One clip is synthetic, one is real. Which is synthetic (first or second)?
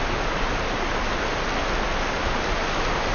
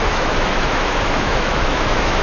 second